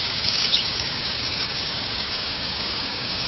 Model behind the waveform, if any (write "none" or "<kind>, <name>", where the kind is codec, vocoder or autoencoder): codec, DAC